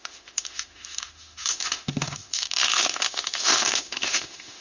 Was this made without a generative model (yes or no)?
no